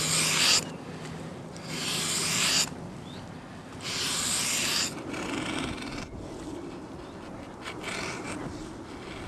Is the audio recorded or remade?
recorded